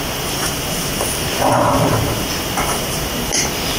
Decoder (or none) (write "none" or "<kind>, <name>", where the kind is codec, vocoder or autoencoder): none